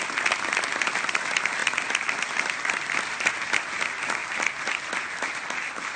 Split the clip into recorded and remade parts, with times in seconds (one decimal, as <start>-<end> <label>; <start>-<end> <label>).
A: 0.0-6.0 recorded